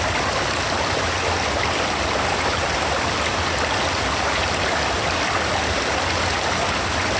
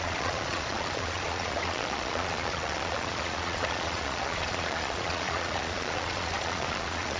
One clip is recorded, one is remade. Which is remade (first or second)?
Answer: second